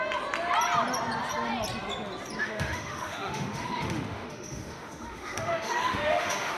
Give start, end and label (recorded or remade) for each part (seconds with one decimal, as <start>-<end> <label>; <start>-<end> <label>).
0.0-2.4 recorded; 2.4-6.6 remade